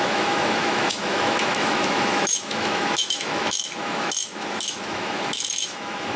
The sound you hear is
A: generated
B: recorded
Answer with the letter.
A